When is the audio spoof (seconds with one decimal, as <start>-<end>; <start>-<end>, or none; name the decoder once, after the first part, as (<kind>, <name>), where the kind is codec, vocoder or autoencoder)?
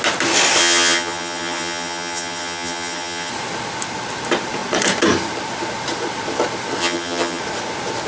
0.6-3.3 (vocoder, HiFi-GAN); 6.8-7.4